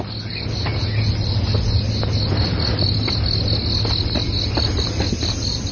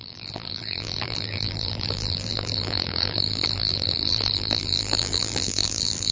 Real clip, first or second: first